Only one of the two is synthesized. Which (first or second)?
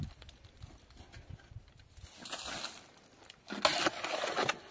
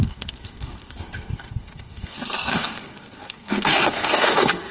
second